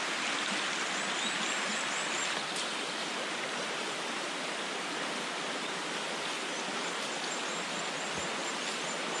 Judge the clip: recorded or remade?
recorded